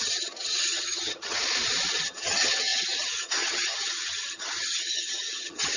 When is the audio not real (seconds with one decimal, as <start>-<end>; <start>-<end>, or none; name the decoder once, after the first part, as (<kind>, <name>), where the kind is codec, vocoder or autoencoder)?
0.0-1.4 (vocoder, HiFi-GAN); 1.9-5.8